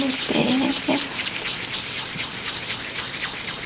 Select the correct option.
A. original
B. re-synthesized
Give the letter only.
A